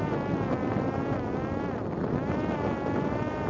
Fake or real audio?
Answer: real